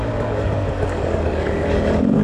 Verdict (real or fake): fake